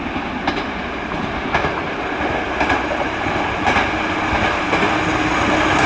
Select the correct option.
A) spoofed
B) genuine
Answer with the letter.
B